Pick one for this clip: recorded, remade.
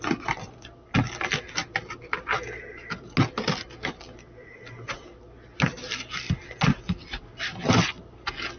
recorded